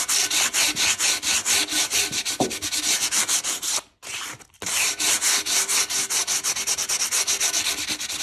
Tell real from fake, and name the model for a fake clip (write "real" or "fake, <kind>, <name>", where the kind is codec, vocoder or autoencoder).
real